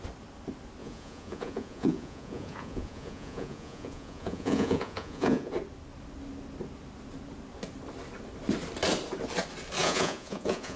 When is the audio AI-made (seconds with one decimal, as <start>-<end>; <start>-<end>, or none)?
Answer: 0.8-5.5; 9.8-10.8